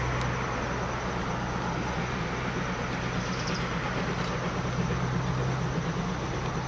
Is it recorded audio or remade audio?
recorded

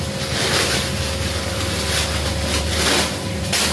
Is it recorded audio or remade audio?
recorded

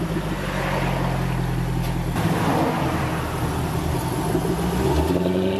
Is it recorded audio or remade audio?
recorded